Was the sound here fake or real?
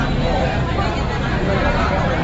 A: real